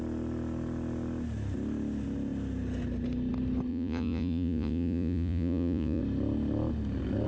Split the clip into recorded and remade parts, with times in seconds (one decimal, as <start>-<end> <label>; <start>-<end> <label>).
0.0-3.7 recorded; 3.7-6.0 remade; 6.0-7.3 recorded